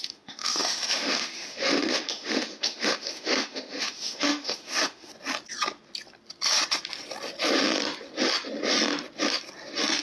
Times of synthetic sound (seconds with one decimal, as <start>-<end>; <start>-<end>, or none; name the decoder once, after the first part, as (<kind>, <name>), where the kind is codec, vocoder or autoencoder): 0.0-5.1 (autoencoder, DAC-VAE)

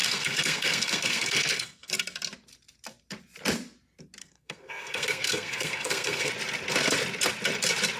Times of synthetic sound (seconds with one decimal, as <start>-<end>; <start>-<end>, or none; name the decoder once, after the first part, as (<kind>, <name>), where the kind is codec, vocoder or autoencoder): 0.0-1.9 (codec, SNAC); 4.2-6.3

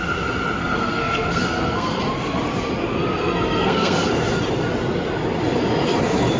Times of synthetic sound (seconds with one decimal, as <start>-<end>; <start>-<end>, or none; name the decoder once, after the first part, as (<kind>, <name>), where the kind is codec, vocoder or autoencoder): 0.6-2.0 (codec, SNAC); 3.2-4.1